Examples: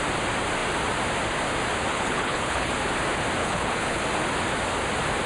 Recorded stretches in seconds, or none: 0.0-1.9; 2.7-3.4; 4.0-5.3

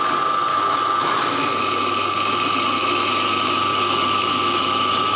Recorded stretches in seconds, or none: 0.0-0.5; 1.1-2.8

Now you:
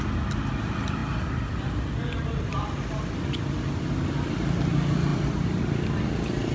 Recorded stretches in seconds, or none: 0.0-5.1; 5.8-6.5

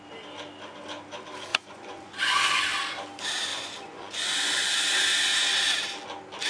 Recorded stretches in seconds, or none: 0.0-1.5; 2.6-3.5; 4.7-6.5

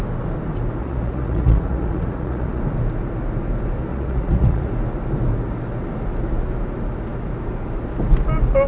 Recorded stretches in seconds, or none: 0.0-0.8; 2.6-3.9; 4.7-8.7

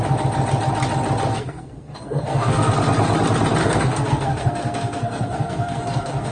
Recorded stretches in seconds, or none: 0.0-1.3; 2.7-3.6